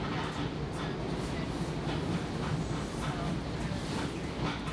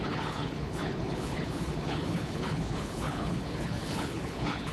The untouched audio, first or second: first